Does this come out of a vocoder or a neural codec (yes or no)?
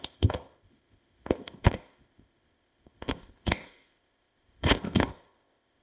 yes